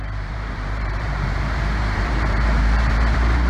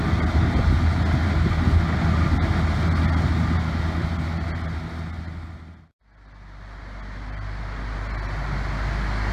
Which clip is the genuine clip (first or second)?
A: second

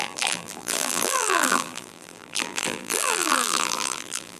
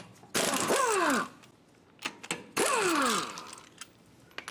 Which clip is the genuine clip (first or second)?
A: second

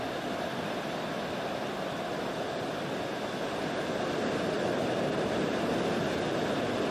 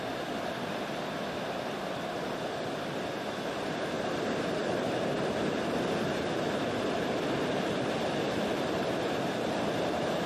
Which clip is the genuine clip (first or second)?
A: first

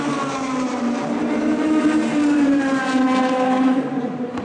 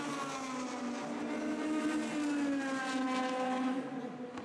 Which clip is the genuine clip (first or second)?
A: second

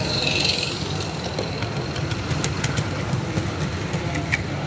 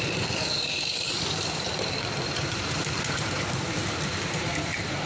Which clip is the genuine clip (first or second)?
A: first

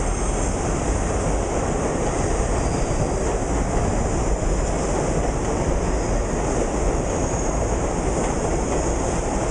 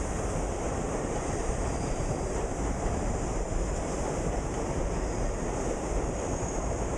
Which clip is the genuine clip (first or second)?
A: first